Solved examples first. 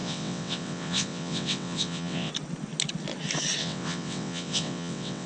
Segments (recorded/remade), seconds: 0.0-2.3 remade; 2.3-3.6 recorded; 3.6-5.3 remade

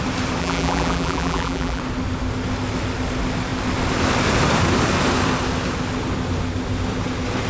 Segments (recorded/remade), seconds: 0.0-0.4 recorded; 0.4-1.8 remade; 1.8-7.5 recorded

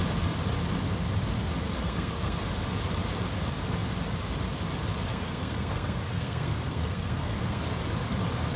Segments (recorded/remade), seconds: 0.0-1.8 recorded; 1.8-2.4 remade; 2.4-5.1 recorded; 5.1-7.6 remade; 7.6-8.6 recorded

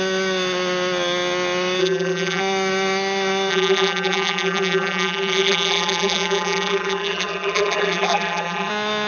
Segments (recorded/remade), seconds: 0.0-1.8 recorded; 1.8-2.4 remade; 2.4-3.5 recorded; 3.5-8.7 remade; 8.7-9.1 recorded

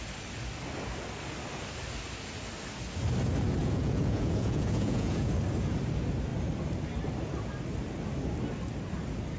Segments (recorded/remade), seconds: 0.0-3.6 recorded; 3.6-5.3 remade; 5.3-9.4 recorded